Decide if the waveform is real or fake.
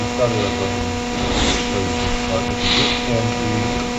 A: real